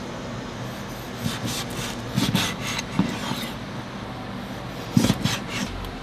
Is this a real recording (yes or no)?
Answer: yes